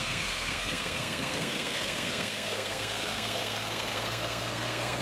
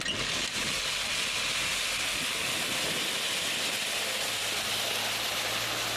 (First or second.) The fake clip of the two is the first